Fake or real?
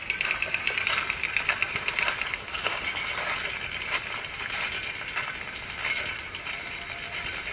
real